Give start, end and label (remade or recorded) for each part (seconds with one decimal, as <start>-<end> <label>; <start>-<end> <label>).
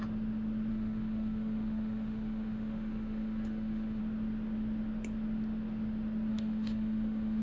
0.0-0.7 recorded; 0.7-4.0 remade; 4.0-6.3 recorded; 6.3-7.4 remade